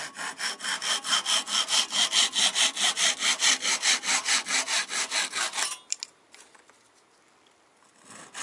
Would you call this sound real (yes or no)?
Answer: yes